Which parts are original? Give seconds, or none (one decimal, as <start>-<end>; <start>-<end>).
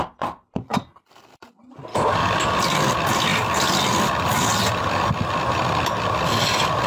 0.0-1.9; 2.6-6.9